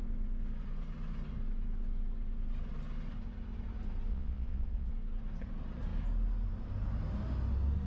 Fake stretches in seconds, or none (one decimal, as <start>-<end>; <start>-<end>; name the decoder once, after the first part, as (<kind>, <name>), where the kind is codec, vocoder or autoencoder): 4.1-4.9 (vocoder, Vocos)